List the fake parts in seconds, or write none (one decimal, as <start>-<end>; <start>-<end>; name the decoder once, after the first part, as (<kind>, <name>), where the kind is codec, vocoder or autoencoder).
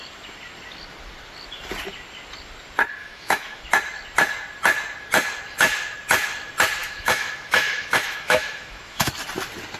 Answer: 3.0-3.6 (autoencoder, DAC-VAE); 6.8-9.1